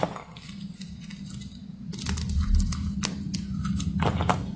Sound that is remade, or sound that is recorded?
recorded